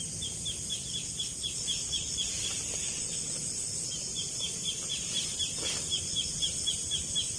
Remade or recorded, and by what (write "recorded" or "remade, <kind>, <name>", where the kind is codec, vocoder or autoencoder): recorded